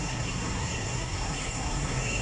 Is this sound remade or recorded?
remade